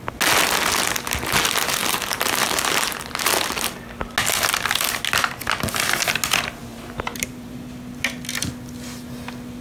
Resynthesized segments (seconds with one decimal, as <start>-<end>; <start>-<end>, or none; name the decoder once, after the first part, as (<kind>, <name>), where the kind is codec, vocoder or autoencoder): 1.8-3.3 (vocoder, BigVGAN v2); 6.7-7.5

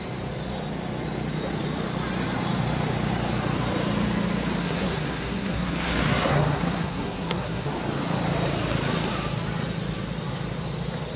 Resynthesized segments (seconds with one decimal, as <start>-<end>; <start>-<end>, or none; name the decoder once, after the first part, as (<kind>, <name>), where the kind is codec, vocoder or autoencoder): 4.6-7.7 (codec, SNAC)

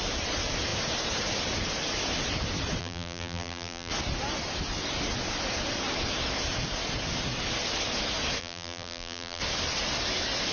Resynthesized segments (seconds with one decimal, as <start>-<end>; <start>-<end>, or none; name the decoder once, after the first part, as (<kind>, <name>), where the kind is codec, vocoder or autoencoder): 2.8-3.9 (vocoder, BigVGAN v2); 8.4-9.4

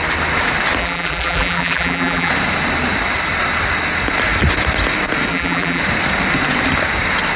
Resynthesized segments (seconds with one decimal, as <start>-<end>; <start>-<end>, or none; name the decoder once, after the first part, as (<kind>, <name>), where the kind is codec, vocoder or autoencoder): 0.8-2.3 (vocoder, BigVGAN v2); 5.3-5.8

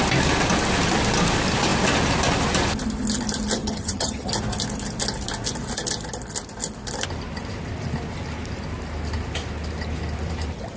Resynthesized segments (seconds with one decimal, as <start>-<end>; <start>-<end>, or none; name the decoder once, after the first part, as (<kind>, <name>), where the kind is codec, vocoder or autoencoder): 3.6-4.3 (vocoder, HiFi-GAN)

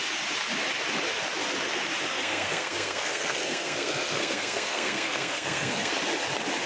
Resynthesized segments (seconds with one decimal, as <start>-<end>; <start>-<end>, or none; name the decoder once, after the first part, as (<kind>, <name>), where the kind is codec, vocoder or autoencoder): 2.1-5.9 (codec, SNAC)

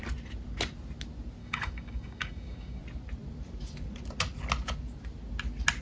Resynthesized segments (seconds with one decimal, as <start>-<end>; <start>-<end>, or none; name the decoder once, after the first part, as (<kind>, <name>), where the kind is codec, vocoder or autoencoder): 1.4-2.8 (codec, DAC)